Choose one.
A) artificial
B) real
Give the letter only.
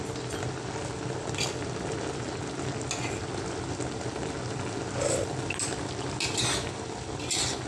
B